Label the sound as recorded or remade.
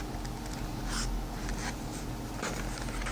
recorded